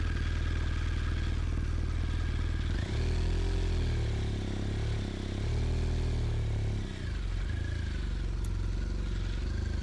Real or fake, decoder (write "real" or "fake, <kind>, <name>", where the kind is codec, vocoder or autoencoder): real